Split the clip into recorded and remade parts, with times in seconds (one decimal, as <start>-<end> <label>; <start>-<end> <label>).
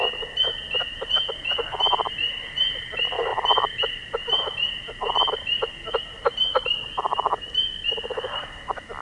0.0-9.0 recorded